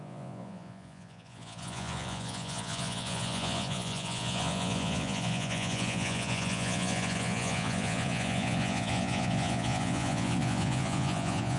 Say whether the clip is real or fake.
fake